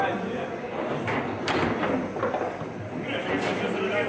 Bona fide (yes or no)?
yes